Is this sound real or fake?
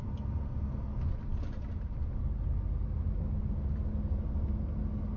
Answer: real